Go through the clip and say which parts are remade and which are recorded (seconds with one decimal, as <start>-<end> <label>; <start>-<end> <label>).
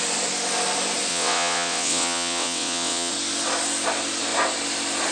0.0-1.1 recorded; 1.1-3.1 remade; 3.1-5.1 recorded